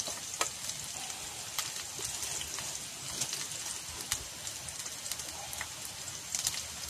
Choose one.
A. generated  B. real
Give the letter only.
B